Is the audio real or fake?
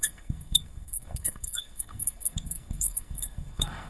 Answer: fake